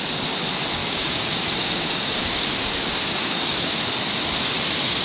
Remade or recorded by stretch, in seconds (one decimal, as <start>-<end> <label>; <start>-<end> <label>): 0.0-0.8 recorded; 0.8-3.8 remade; 3.8-5.0 recorded